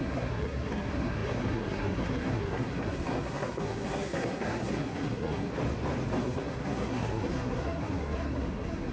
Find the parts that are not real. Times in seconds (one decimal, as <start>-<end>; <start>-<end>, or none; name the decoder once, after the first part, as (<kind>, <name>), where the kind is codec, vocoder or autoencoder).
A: 0.0-5.5 (codec, SNAC); 6.2-8.9